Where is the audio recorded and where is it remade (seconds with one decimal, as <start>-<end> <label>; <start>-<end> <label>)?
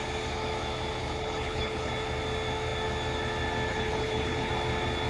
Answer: 0.0-1.0 recorded; 1.0-1.9 remade; 1.9-3.7 recorded; 3.7-4.5 remade; 4.5-5.1 recorded